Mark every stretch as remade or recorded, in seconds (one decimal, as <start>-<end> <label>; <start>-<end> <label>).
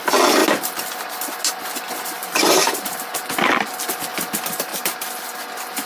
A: 0.0-2.2 recorded; 2.2-2.9 remade; 2.9-4.7 recorded; 4.7-5.2 remade; 5.2-5.9 recorded